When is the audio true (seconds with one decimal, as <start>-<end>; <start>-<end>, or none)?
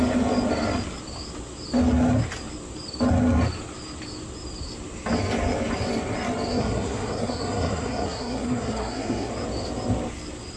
0.0-6.5; 9.3-10.6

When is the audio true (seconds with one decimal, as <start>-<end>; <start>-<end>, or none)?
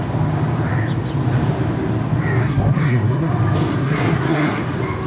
0.0-2.4; 3.3-3.7; 4.6-5.1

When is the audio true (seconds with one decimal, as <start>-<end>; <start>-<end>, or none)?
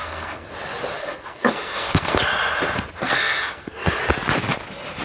0.5-1.0; 2.2-3.0; 4.0-5.0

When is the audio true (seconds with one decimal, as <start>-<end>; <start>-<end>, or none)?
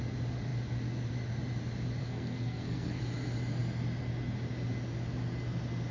0.0-2.0; 3.0-5.9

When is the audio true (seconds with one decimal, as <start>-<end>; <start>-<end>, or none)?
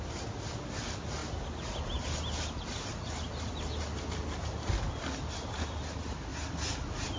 0.0-7.2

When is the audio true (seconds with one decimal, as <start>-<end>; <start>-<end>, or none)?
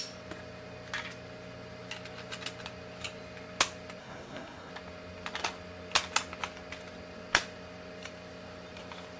0.0-4.0; 4.7-9.2